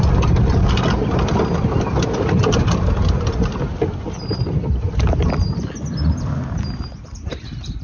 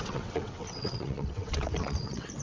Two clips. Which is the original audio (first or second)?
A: first